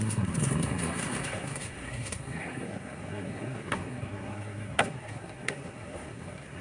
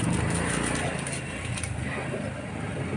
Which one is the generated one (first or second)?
first